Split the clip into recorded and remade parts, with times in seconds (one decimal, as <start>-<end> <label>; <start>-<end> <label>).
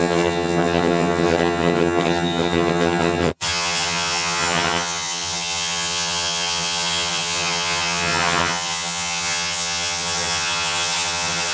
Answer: 0.0-11.5 remade